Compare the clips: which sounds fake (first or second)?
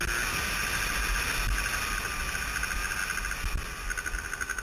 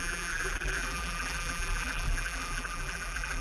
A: second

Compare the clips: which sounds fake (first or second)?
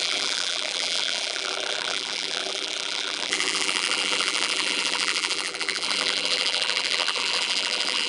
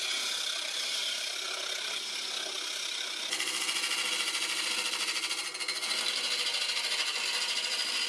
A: first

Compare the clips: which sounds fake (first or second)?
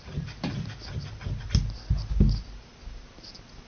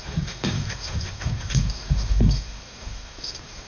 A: second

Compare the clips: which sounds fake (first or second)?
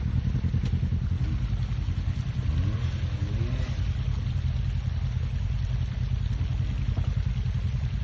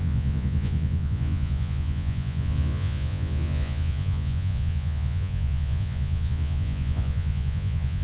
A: second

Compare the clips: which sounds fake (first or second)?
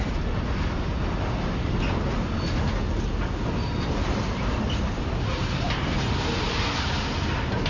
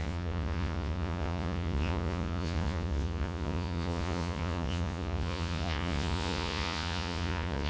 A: second